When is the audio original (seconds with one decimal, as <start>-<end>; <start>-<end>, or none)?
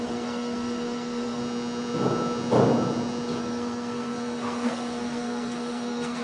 1.4-3.4